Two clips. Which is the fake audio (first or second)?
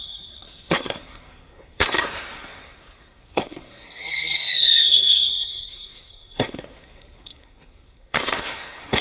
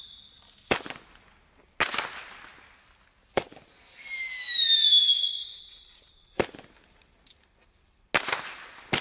first